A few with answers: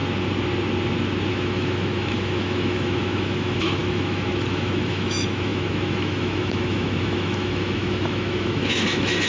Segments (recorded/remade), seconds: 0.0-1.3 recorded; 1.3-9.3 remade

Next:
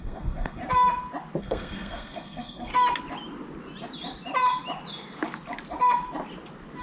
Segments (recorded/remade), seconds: 0.0-0.6 remade; 0.6-1.4 recorded; 1.4-2.7 remade; 2.7-6.8 recorded

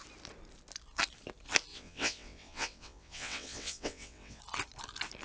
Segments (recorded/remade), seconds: 0.0-1.7 recorded; 1.7-4.4 remade; 4.4-5.2 recorded

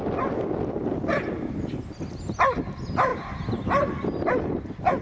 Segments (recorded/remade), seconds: 0.0-5.0 recorded

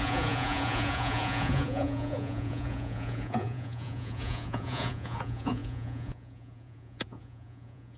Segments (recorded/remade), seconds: 0.0-8.0 remade

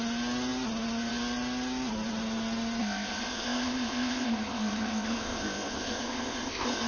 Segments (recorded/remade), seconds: 0.0-2.8 recorded; 2.8-6.9 remade

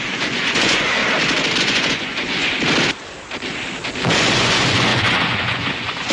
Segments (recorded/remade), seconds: 0.0-1.0 remade; 1.0-1.6 recorded; 1.6-2.5 remade; 2.5-4.1 recorded; 4.1-6.1 remade

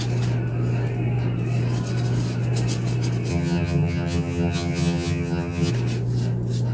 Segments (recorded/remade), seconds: 0.0-3.3 recorded; 3.3-5.7 remade; 5.7-6.7 recorded